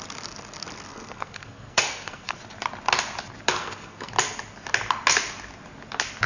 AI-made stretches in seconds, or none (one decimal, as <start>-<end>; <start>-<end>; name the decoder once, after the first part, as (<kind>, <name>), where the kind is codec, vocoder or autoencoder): 0.9-2.4 (codec, SNAC); 3.6-4.1